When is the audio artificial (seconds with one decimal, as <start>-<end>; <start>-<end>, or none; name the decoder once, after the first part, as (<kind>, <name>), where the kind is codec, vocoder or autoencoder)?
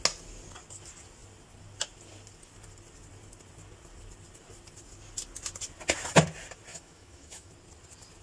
6.7-7.5 (autoencoder, DAC-VAE)